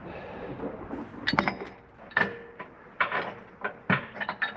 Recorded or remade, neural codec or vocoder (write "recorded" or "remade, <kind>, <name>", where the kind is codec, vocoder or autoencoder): recorded